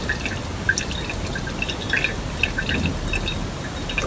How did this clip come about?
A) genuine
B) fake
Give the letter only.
A